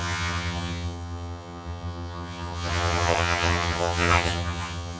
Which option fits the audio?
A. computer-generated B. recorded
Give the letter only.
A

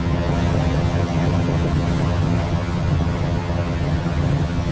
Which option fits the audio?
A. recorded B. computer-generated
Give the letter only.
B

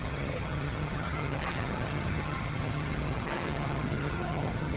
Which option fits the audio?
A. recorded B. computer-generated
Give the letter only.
B